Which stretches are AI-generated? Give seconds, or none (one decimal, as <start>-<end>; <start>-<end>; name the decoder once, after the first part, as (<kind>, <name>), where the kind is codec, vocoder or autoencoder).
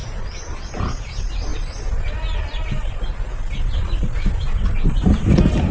none